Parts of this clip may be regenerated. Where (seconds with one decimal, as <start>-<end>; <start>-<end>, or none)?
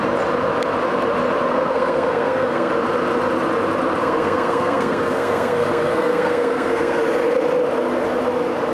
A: 1.5-2.7; 4.0-7.0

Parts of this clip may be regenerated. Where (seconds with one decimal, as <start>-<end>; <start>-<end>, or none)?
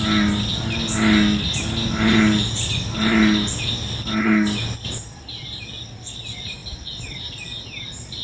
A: none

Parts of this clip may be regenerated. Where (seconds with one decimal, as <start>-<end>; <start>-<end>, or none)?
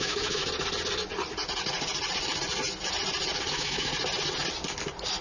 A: 0.0-0.4; 3.5-3.9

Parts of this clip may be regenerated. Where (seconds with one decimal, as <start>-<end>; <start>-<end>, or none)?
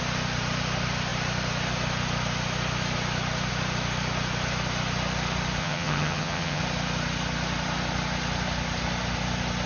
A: 5.6-6.6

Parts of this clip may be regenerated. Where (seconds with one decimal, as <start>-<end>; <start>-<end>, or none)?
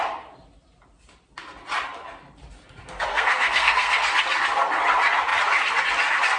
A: 3.1-4.1